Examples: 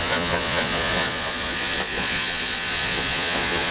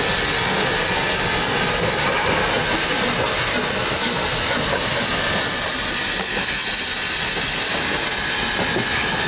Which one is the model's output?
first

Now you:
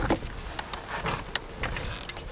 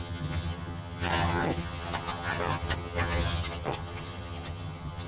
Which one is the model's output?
second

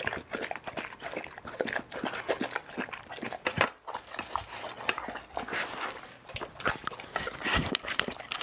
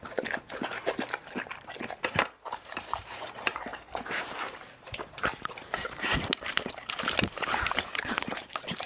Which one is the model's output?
second